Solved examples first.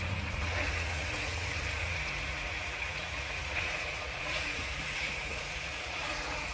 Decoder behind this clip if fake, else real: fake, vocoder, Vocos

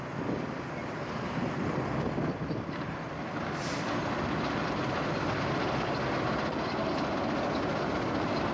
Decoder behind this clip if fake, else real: real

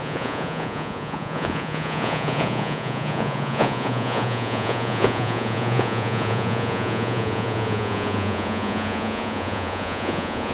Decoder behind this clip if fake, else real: fake, vocoder, Vocos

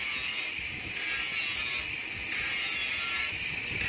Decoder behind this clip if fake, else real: real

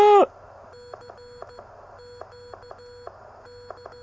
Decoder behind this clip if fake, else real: real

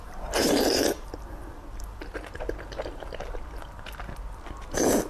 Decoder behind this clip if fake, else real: real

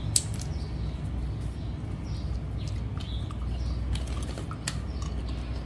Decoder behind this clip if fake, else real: real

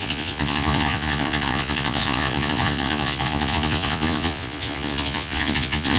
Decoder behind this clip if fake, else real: fake, vocoder, Vocos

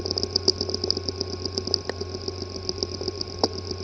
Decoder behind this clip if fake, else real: real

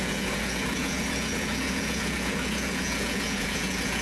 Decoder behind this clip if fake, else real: fake, vocoder, Vocos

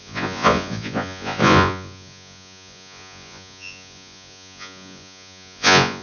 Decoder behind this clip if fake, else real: fake, vocoder, Vocos